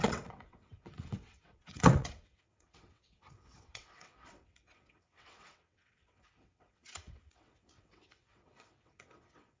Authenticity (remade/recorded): remade